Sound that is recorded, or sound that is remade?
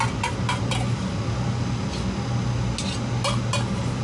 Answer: recorded